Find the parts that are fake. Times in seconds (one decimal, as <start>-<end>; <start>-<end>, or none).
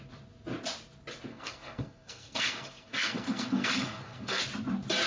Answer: 1.3-4.4